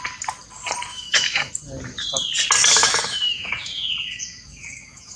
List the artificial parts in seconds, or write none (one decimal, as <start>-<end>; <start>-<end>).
0.9-1.5; 2.8-5.2